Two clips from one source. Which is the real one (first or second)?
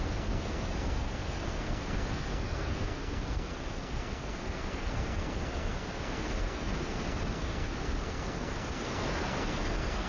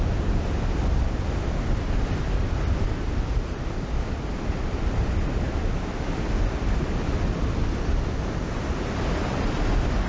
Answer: second